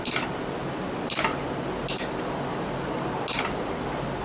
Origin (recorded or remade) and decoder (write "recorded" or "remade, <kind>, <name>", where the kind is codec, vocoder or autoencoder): recorded